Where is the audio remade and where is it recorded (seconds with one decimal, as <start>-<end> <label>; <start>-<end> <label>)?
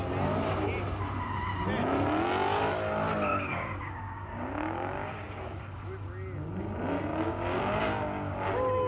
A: 0.0-3.3 recorded; 3.3-5.6 remade; 5.6-7.1 recorded; 7.1-8.5 remade; 8.5-8.9 recorded